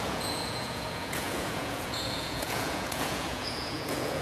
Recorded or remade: remade